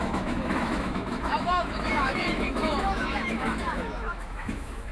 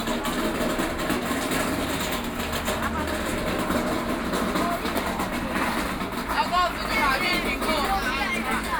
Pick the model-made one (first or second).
first